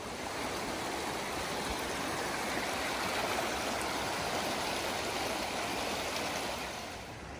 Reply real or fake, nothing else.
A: real